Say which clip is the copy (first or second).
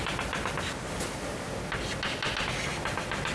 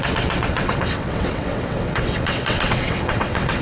second